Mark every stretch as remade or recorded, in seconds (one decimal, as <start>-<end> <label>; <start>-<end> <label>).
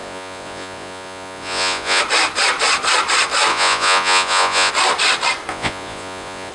0.0-2.0 remade; 2.0-3.5 recorded; 3.5-4.7 remade; 4.7-5.5 recorded; 5.5-6.5 remade